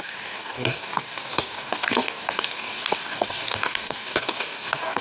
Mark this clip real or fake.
fake